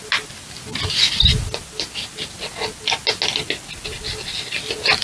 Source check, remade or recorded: recorded